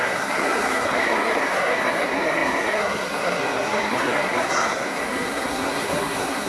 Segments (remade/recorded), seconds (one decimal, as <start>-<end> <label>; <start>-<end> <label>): 0.0-6.5 remade